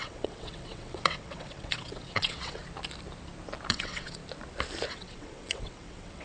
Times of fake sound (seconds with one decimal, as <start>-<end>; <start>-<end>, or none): 0.0-2.6; 3.7-4.2; 4.9-6.2